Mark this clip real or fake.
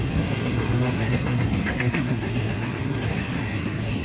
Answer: fake